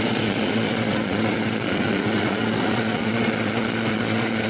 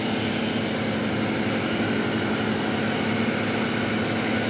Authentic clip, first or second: second